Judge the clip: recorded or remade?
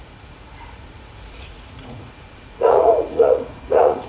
remade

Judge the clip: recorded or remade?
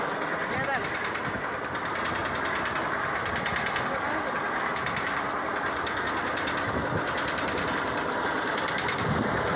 recorded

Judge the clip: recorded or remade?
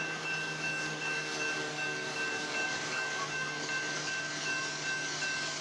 remade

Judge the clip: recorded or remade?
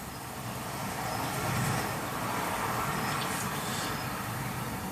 remade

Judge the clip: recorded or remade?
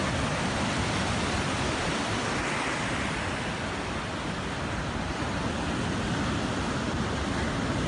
recorded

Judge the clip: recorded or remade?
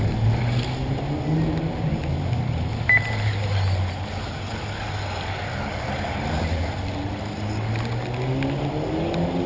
recorded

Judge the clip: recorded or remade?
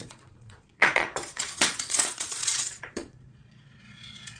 remade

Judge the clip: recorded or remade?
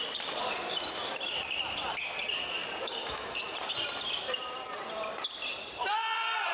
remade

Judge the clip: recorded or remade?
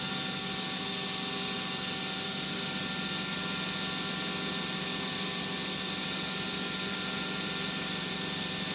recorded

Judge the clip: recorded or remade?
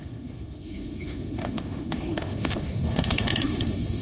remade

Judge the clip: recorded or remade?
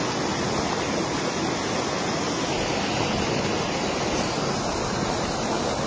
recorded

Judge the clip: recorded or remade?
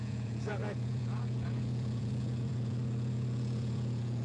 remade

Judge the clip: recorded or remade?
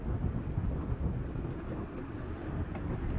recorded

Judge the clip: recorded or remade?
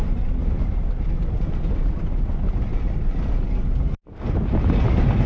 recorded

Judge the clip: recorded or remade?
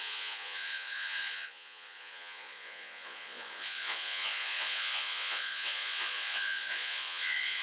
remade